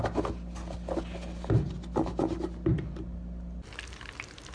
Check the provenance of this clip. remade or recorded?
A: recorded